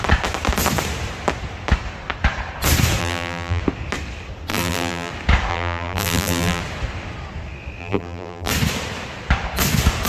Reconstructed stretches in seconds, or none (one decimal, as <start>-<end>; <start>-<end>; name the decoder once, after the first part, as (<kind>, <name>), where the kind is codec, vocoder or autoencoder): 3.0-3.6 (vocoder, BigVGAN v2); 4.5-5.1; 5.5-6.6; 7.8-8.5